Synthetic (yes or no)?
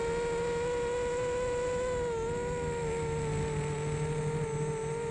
no